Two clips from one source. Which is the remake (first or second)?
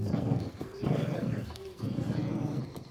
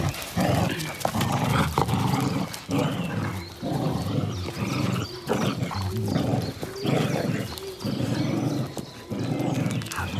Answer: first